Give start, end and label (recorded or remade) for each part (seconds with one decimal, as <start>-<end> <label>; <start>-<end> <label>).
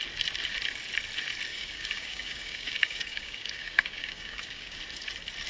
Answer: 0.0-1.5 recorded; 1.5-4.8 remade; 4.8-5.5 recorded